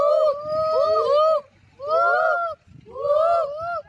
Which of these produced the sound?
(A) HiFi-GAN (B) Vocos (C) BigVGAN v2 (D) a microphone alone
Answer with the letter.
D